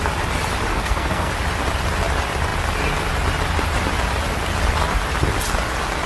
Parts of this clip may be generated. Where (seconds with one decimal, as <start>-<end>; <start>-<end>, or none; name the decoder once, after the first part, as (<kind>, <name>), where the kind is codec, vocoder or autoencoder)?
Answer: 0.7-1.3 (codec, SNAC)